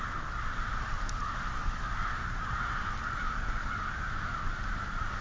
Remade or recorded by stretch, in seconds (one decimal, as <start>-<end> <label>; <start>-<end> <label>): 0.0-5.2 recorded